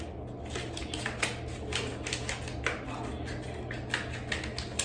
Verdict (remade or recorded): recorded